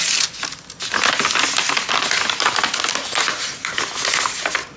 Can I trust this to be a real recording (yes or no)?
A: yes